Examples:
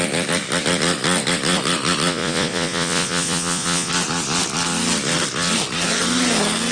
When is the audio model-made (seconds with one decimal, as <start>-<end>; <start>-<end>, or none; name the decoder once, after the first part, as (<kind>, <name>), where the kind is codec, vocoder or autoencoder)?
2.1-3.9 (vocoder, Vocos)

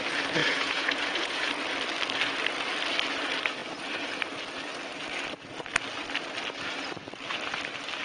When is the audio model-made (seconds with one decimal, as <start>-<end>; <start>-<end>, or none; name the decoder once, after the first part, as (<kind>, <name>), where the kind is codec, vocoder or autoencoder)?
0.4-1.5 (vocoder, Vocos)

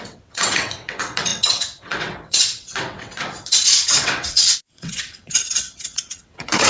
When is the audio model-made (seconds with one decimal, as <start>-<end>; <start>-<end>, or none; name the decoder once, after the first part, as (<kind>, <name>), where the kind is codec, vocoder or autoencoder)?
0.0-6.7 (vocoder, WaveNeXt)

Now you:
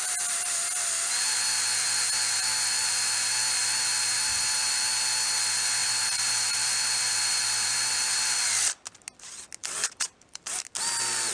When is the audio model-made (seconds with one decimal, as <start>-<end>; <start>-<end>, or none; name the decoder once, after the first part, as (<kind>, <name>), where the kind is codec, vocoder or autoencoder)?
5.8-8.7 (vocoder, BigVGAN v2); 9.6-10.5

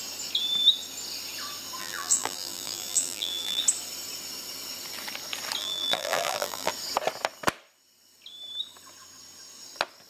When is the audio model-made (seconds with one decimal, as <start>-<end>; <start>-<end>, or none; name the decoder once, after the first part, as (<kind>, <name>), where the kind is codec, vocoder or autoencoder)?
1.8-3.6 (vocoder, BigVGAN v2); 5.6-6.7